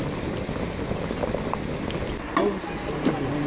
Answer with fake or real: real